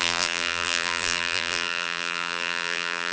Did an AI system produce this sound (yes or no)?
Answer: yes